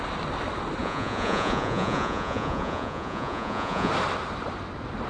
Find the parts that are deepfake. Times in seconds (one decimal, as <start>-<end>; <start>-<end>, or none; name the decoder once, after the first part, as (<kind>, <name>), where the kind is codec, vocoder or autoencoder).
0.8-3.9 (vocoder, Vocos)